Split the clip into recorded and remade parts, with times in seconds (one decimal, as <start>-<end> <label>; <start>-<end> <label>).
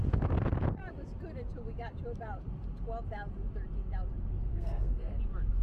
0.0-4.5 recorded; 4.5-5.1 remade; 5.1-5.6 recorded